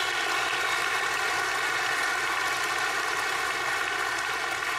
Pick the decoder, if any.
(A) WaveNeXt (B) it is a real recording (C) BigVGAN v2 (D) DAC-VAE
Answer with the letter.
B